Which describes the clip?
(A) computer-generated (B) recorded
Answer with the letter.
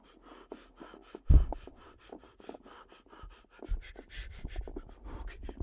B